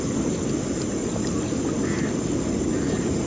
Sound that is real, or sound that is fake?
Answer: real